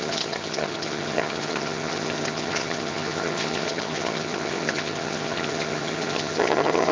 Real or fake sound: fake